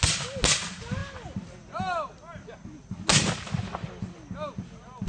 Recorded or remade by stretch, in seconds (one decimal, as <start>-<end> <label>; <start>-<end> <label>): 0.0-5.1 recorded